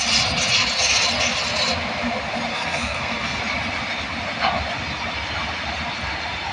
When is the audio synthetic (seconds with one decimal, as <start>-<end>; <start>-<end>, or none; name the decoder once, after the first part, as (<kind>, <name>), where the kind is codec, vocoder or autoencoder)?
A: 2.5-3.4 (codec, SNAC)

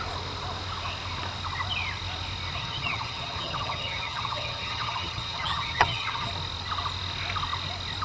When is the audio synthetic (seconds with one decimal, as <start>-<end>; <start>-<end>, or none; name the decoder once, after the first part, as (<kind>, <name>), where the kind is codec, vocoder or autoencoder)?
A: 2.6-6.3 (vocoder, HiFi-GAN)

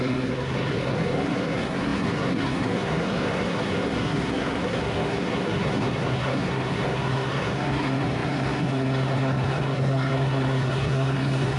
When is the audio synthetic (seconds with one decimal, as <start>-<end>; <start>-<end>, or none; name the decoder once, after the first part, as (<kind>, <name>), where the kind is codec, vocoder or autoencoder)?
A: 0.0-11.6 (codec, SNAC)

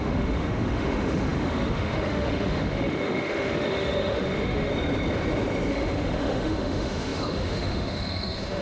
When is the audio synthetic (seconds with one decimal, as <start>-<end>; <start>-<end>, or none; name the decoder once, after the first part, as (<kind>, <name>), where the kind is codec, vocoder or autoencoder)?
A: 0.0-4.7 (autoencoder, DAC-VAE); 5.7-8.6

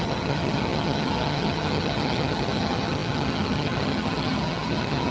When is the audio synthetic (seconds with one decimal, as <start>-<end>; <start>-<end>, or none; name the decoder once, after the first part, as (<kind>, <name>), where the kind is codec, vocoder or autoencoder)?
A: 0.0-5.1 (vocoder, HiFi-GAN)

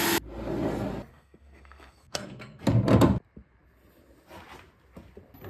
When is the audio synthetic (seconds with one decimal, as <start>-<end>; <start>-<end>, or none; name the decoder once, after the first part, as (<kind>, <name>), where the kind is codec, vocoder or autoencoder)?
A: 1.1-2.6 (codec, SNAC)

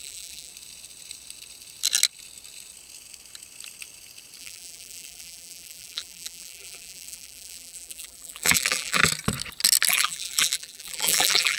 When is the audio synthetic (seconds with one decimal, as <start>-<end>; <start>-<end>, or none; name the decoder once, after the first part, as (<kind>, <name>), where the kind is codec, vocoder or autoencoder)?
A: 0.0-0.5 (vocoder, BigVGAN v2); 4.4-9.0; 9.9-11.6

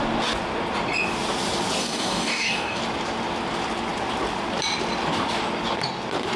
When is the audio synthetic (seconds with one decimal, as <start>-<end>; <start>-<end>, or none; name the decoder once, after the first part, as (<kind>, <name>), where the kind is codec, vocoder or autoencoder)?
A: 1.8-2.8 (codec, DAC)